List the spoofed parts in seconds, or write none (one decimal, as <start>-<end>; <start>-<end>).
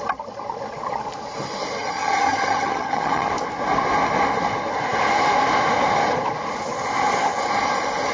1.8-3.3